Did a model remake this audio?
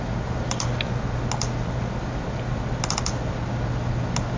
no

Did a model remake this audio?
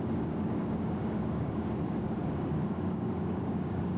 yes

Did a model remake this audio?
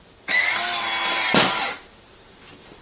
no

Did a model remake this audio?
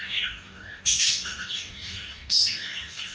yes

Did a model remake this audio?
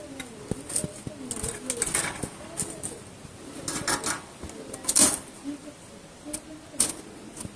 no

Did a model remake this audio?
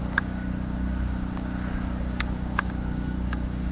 yes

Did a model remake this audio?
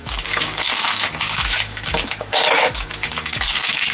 yes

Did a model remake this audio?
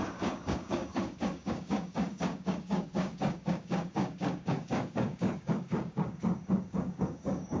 yes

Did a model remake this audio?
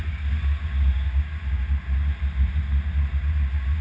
no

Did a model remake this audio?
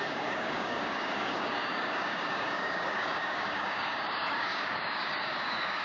yes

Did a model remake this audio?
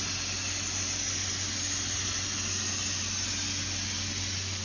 no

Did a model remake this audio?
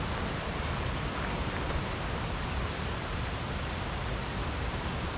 no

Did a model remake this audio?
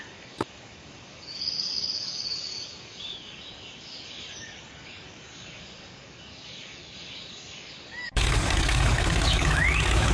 yes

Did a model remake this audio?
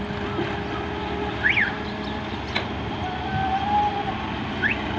no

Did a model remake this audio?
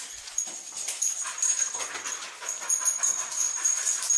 no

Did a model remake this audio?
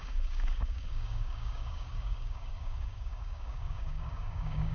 yes